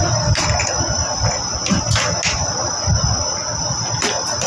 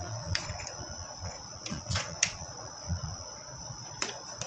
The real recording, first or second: first